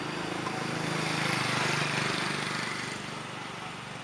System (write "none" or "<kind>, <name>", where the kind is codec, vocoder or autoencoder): none